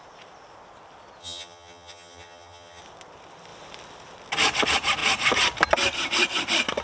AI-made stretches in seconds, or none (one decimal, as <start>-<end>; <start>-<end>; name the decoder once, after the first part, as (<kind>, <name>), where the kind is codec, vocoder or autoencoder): 1.2-2.8 (vocoder, HiFi-GAN)